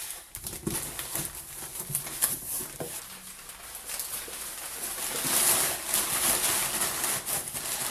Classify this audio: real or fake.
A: real